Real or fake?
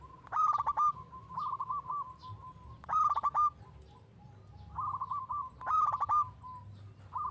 real